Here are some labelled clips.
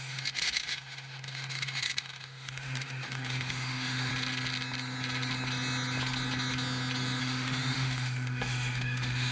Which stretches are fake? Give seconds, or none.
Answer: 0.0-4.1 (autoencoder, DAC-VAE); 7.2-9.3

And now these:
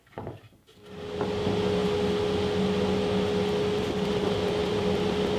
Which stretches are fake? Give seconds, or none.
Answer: none

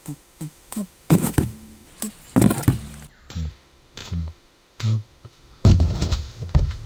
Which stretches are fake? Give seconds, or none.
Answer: 0.0-1.9 (autoencoder, DAC-VAE); 3.5-6.9